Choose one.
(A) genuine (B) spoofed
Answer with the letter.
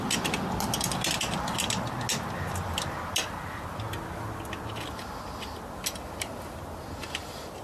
A